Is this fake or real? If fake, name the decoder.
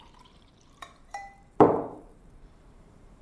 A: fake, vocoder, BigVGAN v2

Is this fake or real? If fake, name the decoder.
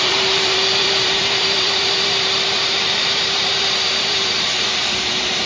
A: fake, vocoder, BigVGAN v2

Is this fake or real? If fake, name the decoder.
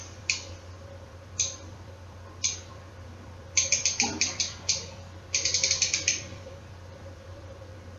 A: fake, vocoder, BigVGAN v2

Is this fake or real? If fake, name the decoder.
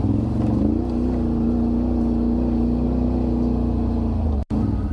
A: real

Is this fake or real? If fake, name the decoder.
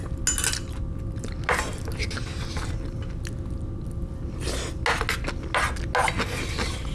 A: real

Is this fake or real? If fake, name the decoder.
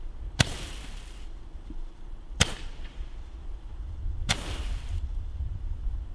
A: fake, vocoder, BigVGAN v2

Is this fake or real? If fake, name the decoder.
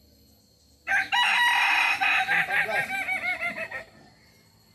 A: real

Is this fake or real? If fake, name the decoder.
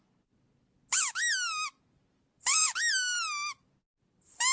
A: real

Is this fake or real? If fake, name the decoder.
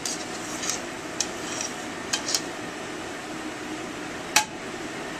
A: fake, vocoder, BigVGAN v2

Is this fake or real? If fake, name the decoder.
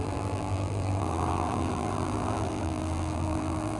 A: fake, vocoder, BigVGAN v2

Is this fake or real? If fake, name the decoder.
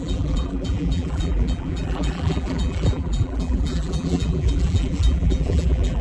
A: fake, vocoder, BigVGAN v2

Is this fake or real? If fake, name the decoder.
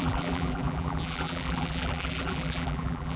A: fake, vocoder, BigVGAN v2